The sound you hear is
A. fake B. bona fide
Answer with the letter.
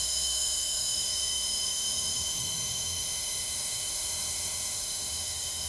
A